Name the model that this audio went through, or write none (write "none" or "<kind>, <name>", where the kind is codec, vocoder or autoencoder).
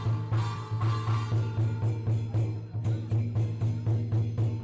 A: none